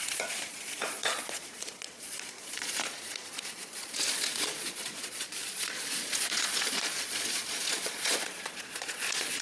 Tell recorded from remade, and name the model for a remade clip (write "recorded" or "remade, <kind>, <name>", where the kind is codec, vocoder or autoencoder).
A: remade, vocoder, Vocos